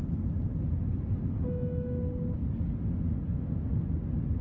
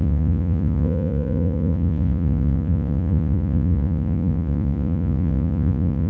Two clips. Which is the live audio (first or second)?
first